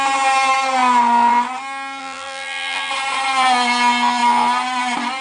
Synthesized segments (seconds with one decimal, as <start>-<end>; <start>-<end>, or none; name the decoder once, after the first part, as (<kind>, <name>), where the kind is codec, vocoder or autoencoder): 2.0-2.9 (vocoder, BigVGAN v2)